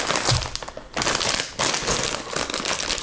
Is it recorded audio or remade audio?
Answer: recorded